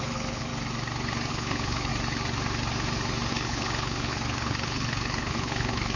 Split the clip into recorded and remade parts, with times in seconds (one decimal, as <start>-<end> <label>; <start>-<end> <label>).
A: 0.0-0.5 remade; 0.5-1.3 recorded; 1.3-1.9 remade; 1.9-3.3 recorded; 3.3-6.0 remade

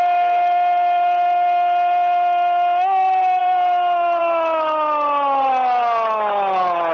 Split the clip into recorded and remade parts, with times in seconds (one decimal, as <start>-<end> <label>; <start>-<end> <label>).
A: 0.0-3.4 recorded; 3.4-4.2 remade; 4.2-6.9 recorded

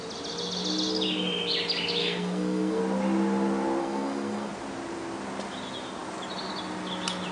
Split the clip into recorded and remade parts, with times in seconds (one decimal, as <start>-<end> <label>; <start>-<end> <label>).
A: 0.0-2.0 recorded; 2.0-2.8 remade; 2.8-3.8 recorded; 3.8-4.5 remade; 4.5-7.3 recorded

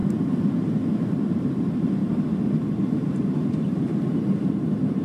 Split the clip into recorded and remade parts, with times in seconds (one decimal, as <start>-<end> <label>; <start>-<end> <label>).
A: 0.0-2.0 remade; 2.0-2.9 recorded; 2.9-5.0 remade

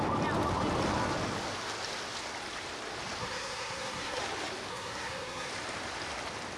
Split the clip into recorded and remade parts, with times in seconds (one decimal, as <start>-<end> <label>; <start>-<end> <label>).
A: 0.0-3.2 recorded; 3.2-4.2 remade; 4.2-4.7 recorded; 4.7-5.5 remade; 5.5-6.6 recorded